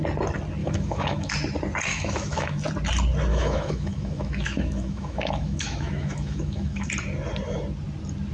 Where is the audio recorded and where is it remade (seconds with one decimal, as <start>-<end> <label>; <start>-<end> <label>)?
0.0-0.6 recorded; 0.6-1.3 remade; 1.3-1.9 recorded; 1.9-2.6 remade; 2.6-3.3 recorded; 3.3-6.9 remade; 6.9-8.3 recorded